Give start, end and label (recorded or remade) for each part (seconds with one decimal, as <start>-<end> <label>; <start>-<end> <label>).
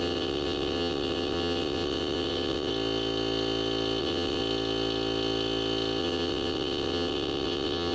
0.0-2.7 remade; 2.7-4.0 recorded; 4.0-4.4 remade; 4.4-6.0 recorded; 6.0-7.9 remade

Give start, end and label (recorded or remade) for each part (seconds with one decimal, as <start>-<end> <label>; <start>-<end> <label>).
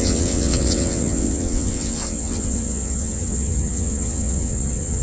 0.0-5.0 remade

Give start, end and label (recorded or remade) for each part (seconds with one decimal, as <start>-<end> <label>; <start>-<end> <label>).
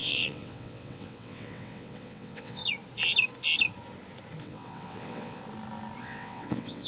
0.0-2.6 remade; 2.6-4.4 recorded; 4.4-5.4 remade; 5.4-6.0 recorded; 6.0-6.9 remade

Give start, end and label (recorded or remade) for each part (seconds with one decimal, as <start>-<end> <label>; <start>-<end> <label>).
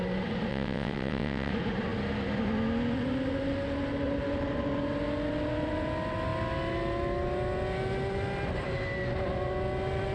0.0-0.5 recorded; 0.5-1.5 remade; 1.5-10.1 recorded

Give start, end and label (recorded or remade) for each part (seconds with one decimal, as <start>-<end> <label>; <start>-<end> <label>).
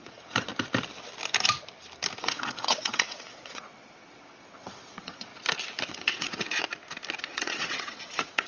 0.0-0.5 remade; 0.5-2.2 recorded; 2.2-5.3 remade; 5.3-5.9 recorded; 5.9-6.6 remade; 6.6-7.2 recorded; 7.2-8.5 remade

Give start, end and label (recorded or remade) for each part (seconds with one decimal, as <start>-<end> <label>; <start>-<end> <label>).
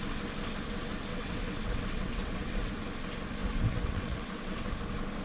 0.0-1.1 recorded; 1.1-2.7 remade; 2.7-3.4 recorded; 3.4-4.7 remade; 4.7-5.2 recorded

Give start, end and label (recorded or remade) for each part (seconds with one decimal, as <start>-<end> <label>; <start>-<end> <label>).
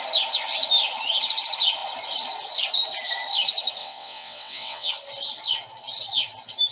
0.0-3.8 recorded; 3.8-4.9 remade; 4.9-6.7 recorded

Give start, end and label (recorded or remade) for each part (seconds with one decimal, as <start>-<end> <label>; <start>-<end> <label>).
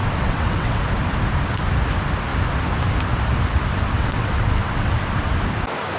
0.0-0.8 remade; 0.8-3.7 recorded; 3.7-5.3 remade; 5.3-6.0 recorded